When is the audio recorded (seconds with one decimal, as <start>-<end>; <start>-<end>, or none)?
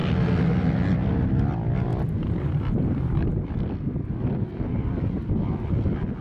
0.0-1.9; 3.2-6.2